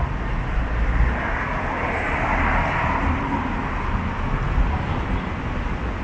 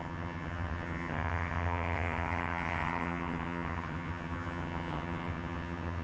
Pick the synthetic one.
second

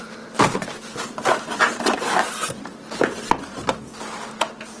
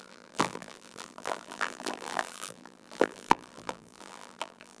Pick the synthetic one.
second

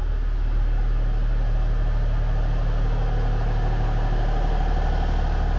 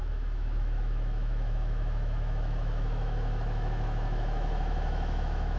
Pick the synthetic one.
second